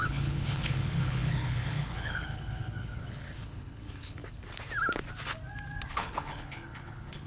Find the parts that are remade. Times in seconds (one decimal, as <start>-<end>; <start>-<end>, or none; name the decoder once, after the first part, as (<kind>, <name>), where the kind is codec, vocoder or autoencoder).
0.0-4.2 (codec, HILCodec); 5.9-7.3